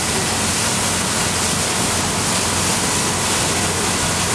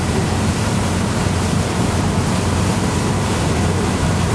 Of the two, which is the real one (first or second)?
first